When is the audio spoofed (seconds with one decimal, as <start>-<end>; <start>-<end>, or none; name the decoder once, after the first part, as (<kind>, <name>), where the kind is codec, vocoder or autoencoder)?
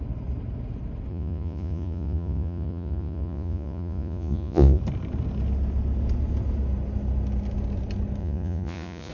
1.1-4.8 (vocoder, Vocos); 8.2-9.1